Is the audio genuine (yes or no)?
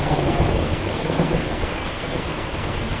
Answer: no